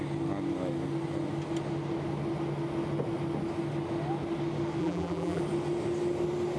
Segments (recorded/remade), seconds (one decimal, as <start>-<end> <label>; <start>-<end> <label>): 0.0-4.8 recorded; 4.8-5.4 remade; 5.4-6.6 recorded